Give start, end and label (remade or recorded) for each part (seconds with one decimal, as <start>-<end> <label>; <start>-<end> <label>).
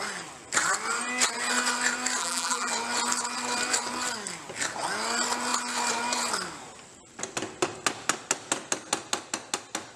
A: 0.0-2.2 recorded; 2.2-2.7 remade; 2.7-10.0 recorded